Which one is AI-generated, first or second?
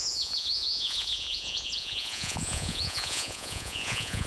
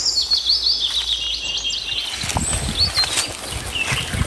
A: first